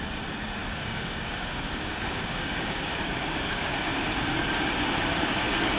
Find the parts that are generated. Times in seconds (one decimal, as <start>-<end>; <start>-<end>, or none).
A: 0.6-4.0